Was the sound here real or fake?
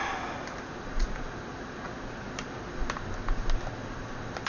real